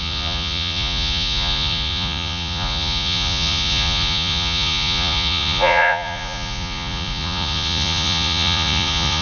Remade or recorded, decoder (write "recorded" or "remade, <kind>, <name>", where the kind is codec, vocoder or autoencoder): remade, vocoder, Vocos